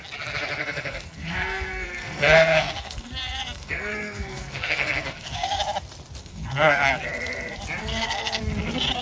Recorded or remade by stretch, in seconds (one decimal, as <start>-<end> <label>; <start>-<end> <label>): 0.0-0.6 recorded; 0.6-5.6 remade; 5.6-6.2 recorded; 6.2-6.9 remade; 6.9-7.8 recorded; 7.8-8.4 remade; 8.4-9.0 recorded